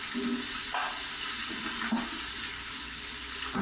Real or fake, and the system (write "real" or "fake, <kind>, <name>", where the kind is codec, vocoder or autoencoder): real